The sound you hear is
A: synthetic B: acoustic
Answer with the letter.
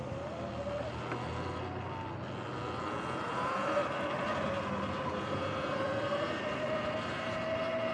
B